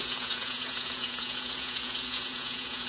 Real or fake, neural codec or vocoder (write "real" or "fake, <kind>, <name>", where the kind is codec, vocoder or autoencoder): fake, vocoder, Vocos